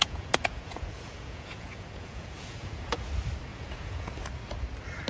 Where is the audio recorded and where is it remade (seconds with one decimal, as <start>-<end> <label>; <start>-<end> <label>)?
0.0-3.1 remade; 3.1-3.5 recorded; 3.5-4.2 remade; 4.2-5.1 recorded